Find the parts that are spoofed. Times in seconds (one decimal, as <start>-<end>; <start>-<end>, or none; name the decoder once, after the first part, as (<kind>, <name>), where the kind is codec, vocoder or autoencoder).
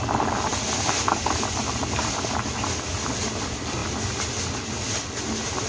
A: none